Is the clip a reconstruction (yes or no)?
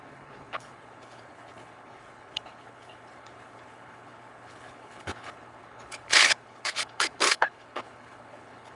yes